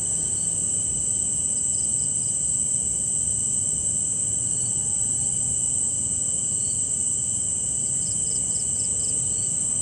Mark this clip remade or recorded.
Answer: recorded